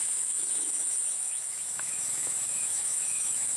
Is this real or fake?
fake